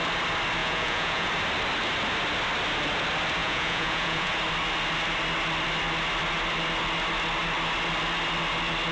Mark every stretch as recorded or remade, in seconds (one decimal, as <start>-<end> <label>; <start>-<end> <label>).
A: 0.0-0.6 recorded; 0.6-1.3 remade; 1.3-3.4 recorded; 3.4-4.3 remade; 4.3-8.9 recorded